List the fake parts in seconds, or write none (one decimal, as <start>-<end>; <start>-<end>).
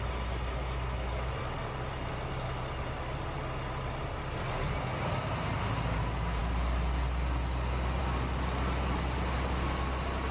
none